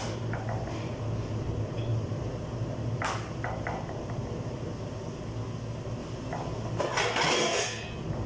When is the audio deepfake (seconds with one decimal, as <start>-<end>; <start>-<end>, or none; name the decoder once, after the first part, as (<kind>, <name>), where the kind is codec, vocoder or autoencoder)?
1.9-5.2 (vocoder, BigVGAN v2); 6.0-6.8